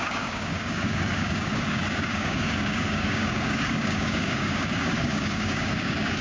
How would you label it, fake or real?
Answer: fake